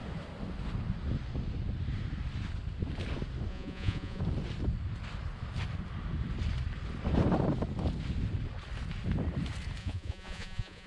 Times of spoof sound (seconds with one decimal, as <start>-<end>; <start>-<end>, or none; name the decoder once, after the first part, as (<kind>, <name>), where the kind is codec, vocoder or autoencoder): 3.5-4.2 (vocoder, Vocos); 9.8-10.9